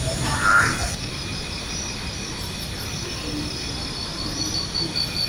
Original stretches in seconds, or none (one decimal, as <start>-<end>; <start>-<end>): 0.0-0.5; 1.1-5.3